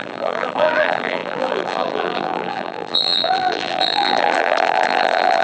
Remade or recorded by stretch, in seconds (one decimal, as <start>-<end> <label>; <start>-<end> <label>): 0.0-5.4 remade